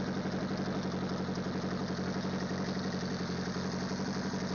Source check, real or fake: real